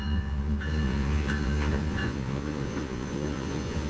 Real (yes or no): no